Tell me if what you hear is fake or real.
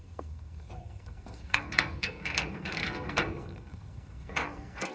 fake